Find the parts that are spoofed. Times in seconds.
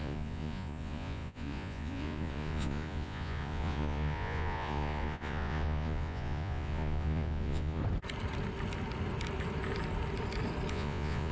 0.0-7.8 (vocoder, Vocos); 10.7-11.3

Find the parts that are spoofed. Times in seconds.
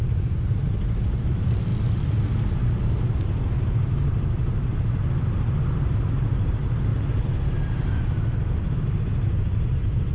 0.0-1.7 (vocoder, BigVGAN v2); 2.5-4.0; 5.7-6.9; 9.0-10.1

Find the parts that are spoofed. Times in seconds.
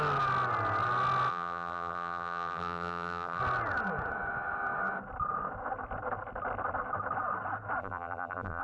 1.3-3.4 (vocoder, BigVGAN v2); 7.8-8.6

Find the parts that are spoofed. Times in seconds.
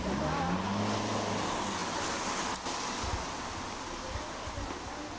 none